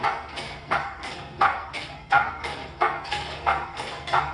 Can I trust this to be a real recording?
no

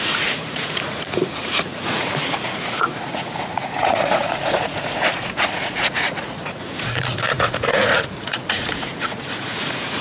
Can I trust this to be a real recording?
no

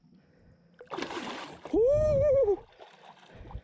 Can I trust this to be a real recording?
yes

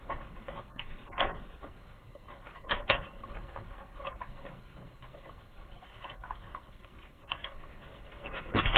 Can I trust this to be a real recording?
no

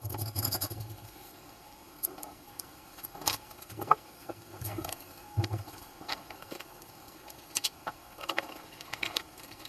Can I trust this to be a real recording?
no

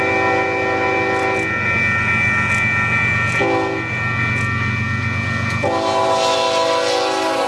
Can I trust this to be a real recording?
yes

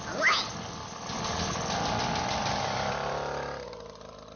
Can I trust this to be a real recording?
yes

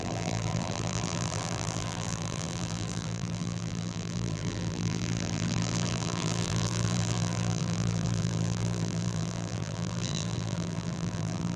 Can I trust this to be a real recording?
no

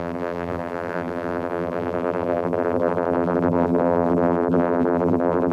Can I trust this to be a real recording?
no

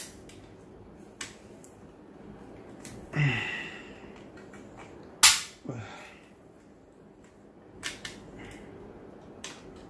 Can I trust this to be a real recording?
yes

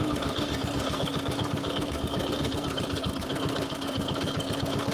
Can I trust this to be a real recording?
no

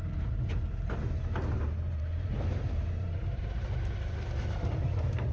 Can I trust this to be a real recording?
no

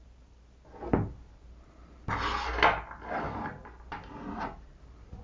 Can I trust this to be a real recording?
yes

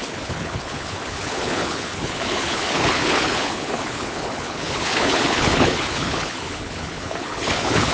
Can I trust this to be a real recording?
no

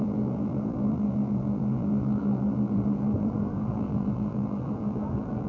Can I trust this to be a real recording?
no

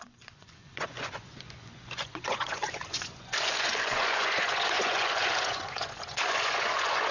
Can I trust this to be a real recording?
no